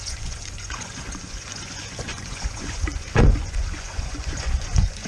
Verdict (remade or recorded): remade